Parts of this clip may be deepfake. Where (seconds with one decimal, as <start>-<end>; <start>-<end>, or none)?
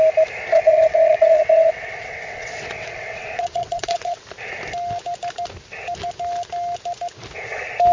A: 0.5-4.2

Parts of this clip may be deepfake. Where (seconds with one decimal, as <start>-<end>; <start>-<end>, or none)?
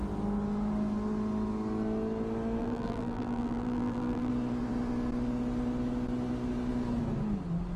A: 2.6-4.3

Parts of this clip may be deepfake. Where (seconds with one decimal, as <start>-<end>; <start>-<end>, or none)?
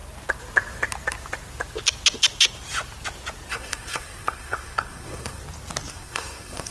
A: 3.5-5.4; 5.9-6.7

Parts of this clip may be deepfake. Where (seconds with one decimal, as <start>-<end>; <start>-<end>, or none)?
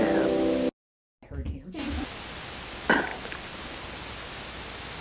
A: none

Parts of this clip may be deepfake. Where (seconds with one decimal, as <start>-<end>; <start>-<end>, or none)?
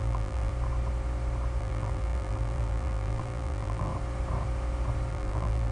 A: 0.0-0.5; 1.6-3.9; 5.1-5.7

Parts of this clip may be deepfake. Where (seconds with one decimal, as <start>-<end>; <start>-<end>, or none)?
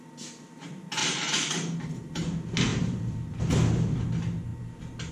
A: 2.7-3.4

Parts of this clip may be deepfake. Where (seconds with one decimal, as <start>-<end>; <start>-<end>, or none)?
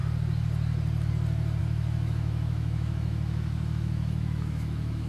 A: 1.6-5.1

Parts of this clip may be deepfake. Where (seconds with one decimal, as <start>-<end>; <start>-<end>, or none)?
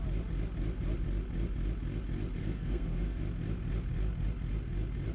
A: 2.4-3.2